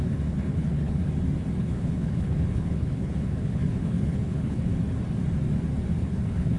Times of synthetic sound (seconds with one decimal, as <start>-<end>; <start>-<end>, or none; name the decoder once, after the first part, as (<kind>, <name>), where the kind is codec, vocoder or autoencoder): 0.0-1.0 (codec, HILCodec); 1.6-4.7; 6.0-6.6

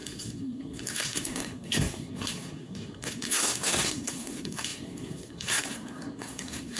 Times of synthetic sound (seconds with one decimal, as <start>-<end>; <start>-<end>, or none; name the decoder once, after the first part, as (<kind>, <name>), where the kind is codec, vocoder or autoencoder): 0.0-6.8 (codec, SNAC)